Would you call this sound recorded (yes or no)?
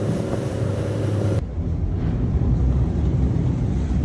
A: no